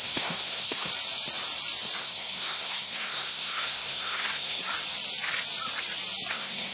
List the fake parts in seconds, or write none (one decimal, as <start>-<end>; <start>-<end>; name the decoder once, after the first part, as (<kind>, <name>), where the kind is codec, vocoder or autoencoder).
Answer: 0.0-0.9 (codec, SNAC); 2.0-4.6; 6.3-6.7